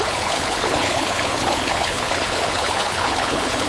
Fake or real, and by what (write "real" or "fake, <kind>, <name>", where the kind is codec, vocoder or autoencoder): fake, codec, HILCodec